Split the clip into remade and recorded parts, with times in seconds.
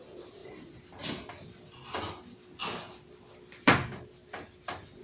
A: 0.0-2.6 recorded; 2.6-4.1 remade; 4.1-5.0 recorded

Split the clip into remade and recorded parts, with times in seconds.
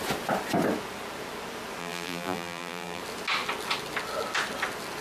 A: 0.0-1.8 recorded; 1.8-3.0 remade; 3.0-5.0 recorded